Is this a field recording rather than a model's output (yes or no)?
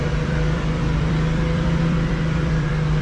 no